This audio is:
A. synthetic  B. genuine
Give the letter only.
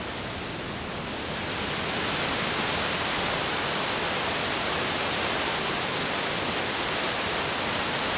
B